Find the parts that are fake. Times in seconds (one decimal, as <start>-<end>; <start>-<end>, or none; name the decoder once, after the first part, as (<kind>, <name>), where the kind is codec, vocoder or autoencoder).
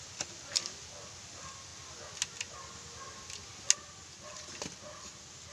none